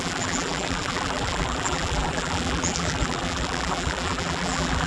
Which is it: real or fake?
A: fake